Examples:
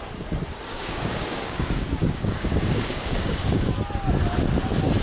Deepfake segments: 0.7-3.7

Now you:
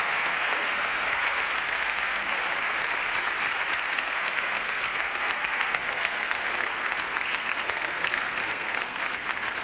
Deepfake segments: 0.0-2.3; 3.9-9.6

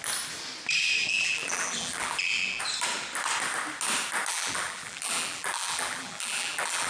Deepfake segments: 1.0-2.6; 4.3-6.9

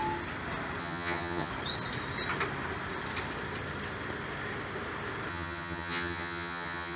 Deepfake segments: 0.8-1.5; 5.3-7.0

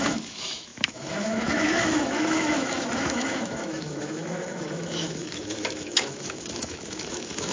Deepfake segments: 0.0-7.5

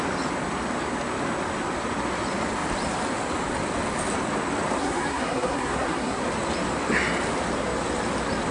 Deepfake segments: 4.8-6.2